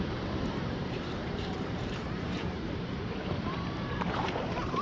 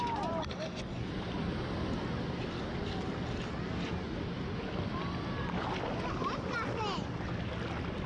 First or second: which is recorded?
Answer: second